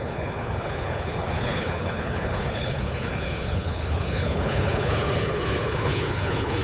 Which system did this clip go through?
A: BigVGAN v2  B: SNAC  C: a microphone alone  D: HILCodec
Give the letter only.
D